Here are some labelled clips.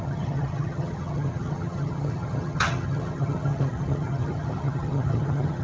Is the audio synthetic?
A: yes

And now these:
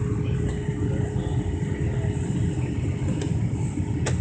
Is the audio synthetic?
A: no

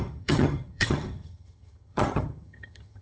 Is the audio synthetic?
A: yes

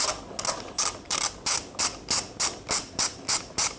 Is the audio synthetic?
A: no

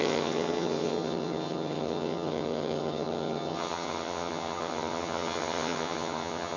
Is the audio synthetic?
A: yes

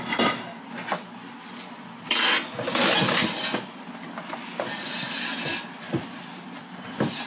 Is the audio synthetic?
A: no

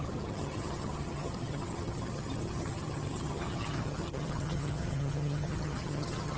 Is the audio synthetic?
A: yes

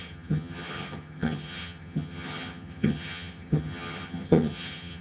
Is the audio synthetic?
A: yes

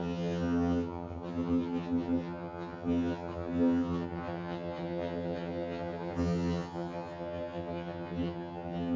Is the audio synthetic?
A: yes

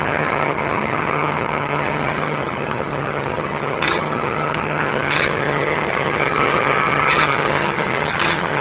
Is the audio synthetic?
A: yes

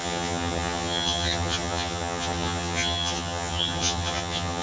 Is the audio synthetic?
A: yes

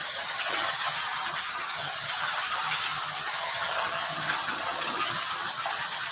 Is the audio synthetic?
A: yes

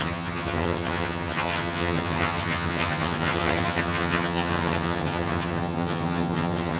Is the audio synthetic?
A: yes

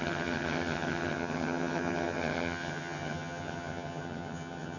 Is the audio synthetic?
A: yes